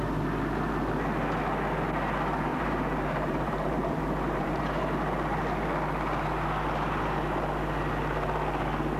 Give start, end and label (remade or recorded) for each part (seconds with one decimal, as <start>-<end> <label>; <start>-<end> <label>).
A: 0.0-2.5 recorded; 2.5-4.6 remade; 4.6-9.0 recorded